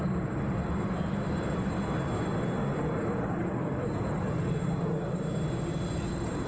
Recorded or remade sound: recorded